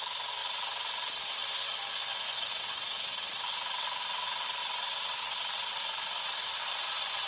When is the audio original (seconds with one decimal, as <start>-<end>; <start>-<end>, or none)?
3.2-3.7